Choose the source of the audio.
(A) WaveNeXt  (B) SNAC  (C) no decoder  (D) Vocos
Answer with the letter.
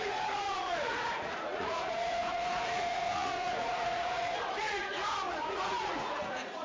D